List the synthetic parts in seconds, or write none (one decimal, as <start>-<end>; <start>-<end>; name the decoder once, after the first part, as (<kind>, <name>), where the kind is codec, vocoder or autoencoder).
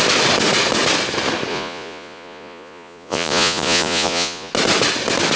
1.5-4.5 (vocoder, Vocos)